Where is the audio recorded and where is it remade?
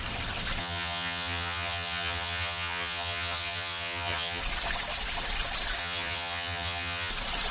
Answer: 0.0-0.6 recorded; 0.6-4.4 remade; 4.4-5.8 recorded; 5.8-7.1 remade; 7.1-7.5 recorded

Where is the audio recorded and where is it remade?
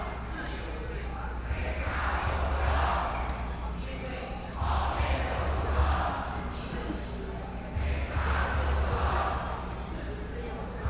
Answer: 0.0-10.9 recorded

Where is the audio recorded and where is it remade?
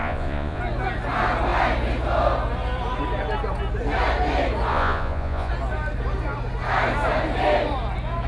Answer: 0.0-0.6 remade; 0.6-4.7 recorded; 4.7-5.5 remade; 5.5-8.3 recorded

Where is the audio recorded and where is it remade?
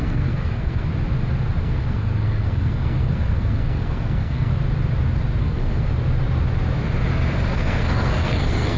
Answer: 0.0-0.9 remade; 0.9-1.6 recorded; 1.6-4.5 remade; 4.5-5.4 recorded; 5.4-5.9 remade; 5.9-7.5 recorded; 7.5-8.8 remade